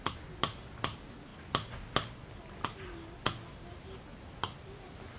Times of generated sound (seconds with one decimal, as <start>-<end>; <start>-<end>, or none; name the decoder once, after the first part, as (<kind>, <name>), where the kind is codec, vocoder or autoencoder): none